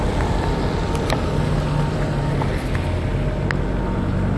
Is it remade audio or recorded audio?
recorded